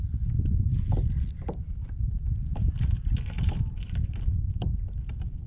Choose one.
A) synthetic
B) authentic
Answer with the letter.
A